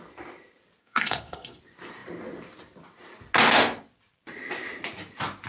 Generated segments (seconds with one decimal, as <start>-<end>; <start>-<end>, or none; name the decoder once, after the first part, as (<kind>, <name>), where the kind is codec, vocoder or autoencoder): 0.8-1.6 (codec, SNAC)